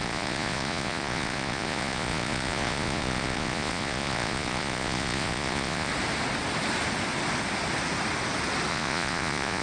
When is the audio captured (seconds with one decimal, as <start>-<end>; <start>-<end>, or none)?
5.9-8.7